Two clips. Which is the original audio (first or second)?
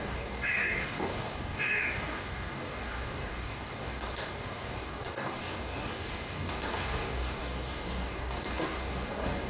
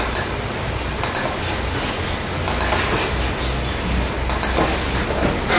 second